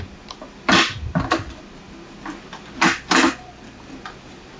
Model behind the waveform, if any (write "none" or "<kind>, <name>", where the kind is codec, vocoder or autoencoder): none